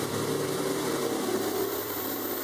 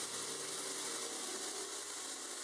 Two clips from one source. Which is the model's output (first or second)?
first